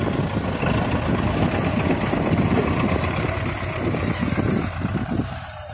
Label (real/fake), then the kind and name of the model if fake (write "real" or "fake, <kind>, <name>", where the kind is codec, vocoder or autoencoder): real